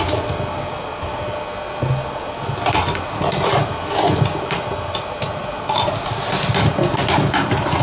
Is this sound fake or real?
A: real